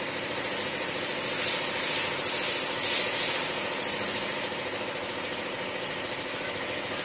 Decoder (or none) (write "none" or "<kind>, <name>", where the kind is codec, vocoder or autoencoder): none